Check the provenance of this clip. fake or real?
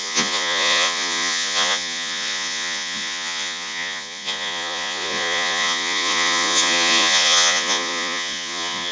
fake